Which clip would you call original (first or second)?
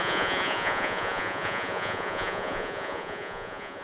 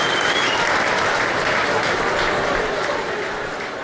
second